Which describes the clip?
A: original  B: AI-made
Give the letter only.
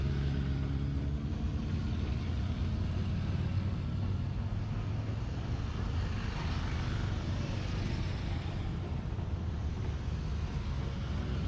A